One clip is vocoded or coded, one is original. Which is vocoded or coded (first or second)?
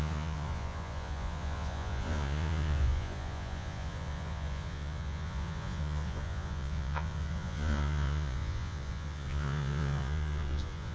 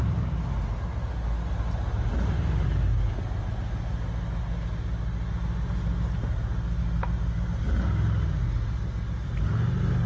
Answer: first